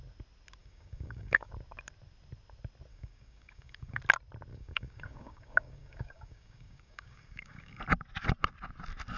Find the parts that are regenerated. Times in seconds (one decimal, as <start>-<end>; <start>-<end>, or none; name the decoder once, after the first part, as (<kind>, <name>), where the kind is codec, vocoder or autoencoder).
0.6-1.5 (codec, DAC); 2.9-4.0; 4.5-7.8